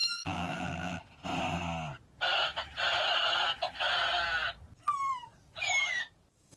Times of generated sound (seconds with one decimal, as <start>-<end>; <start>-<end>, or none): 0.0-1.0